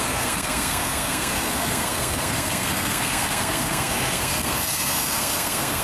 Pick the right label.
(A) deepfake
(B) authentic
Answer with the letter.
A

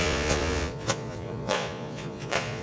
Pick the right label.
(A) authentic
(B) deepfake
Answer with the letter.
B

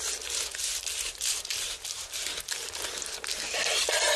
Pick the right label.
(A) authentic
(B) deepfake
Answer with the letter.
A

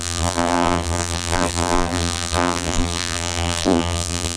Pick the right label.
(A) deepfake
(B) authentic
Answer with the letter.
A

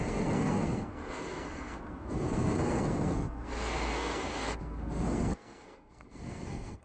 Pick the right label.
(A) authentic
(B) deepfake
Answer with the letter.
B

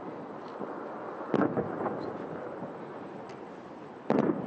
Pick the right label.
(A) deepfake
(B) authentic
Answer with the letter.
B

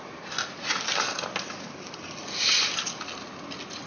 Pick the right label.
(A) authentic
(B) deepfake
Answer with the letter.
A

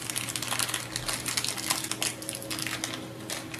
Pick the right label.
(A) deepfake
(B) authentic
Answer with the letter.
B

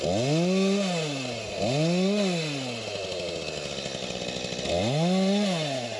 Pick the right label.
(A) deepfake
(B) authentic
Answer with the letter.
B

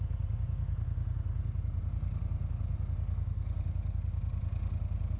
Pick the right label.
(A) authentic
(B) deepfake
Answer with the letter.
A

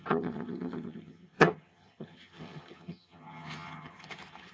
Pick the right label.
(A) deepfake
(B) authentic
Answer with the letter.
A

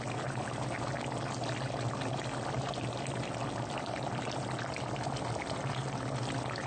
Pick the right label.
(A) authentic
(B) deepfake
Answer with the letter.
A